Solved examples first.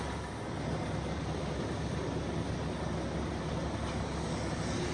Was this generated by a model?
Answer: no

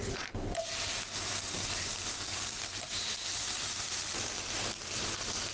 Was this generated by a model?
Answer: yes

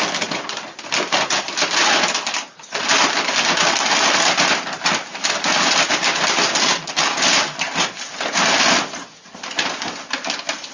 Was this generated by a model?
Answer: no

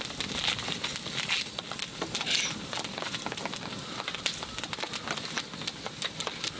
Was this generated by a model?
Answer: no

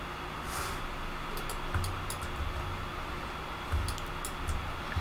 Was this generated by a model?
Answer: no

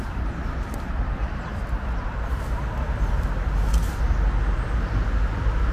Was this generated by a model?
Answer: no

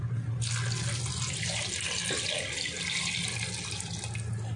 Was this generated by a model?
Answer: no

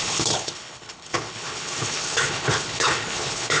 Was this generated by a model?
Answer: yes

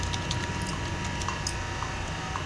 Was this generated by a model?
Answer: no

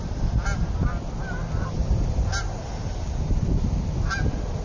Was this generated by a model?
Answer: no